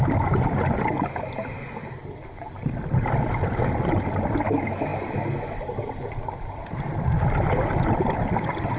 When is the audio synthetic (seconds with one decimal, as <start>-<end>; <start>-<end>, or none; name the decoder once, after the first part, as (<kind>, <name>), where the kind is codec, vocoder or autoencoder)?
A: none